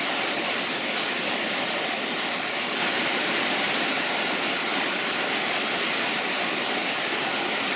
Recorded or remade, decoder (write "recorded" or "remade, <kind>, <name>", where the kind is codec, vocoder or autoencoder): recorded